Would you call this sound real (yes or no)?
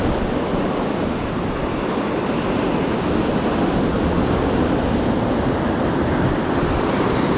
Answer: yes